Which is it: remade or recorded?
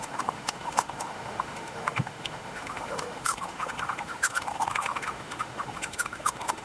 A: remade